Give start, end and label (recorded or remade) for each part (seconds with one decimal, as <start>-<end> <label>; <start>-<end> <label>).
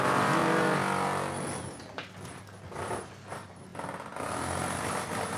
0.0-0.4 remade; 0.4-3.3 recorded; 3.3-3.7 remade; 3.7-4.8 recorded; 4.8-5.4 remade